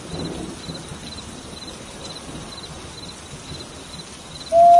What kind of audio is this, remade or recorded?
recorded